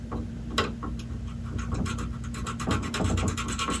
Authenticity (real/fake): real